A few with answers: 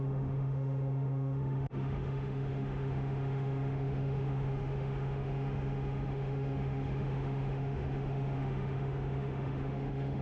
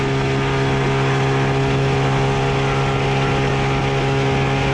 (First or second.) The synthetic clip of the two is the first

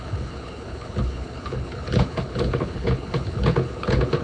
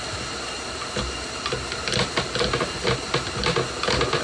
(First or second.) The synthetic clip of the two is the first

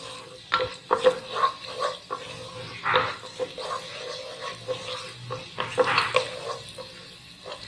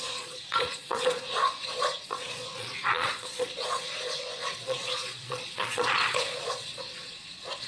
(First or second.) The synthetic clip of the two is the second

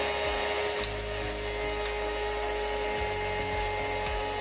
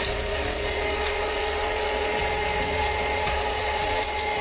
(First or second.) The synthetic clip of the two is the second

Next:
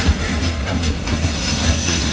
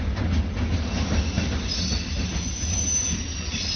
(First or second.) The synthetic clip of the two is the first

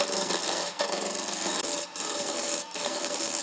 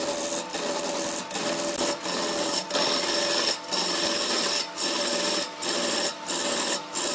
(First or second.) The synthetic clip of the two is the first